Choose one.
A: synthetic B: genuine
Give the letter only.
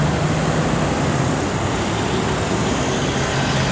B